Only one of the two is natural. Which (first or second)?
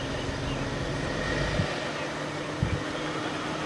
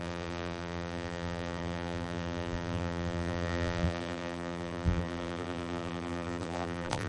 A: first